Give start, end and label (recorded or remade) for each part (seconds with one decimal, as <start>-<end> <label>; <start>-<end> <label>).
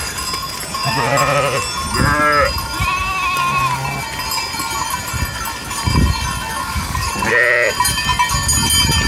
0.0-6.5 recorded; 6.5-7.1 remade; 7.1-9.1 recorded